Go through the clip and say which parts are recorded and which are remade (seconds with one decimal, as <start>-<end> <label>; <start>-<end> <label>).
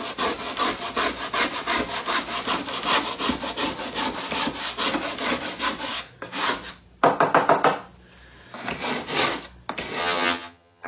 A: 0.0-10.0 recorded; 10.0-10.9 remade